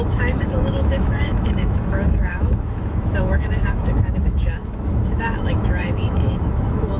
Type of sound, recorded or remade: remade